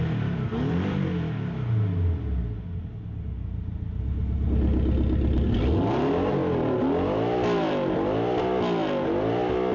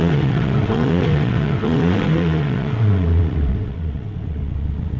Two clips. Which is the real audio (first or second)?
first